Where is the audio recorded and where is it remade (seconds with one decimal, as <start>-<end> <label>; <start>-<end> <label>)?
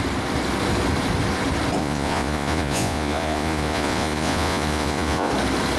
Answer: 0.0-1.8 recorded; 1.8-5.3 remade; 5.3-5.8 recorded